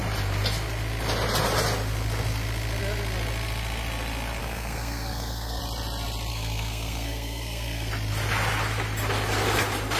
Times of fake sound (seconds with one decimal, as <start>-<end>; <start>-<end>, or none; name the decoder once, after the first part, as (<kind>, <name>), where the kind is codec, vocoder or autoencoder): 4.4-5.6 (codec, SNAC); 6.3-7.9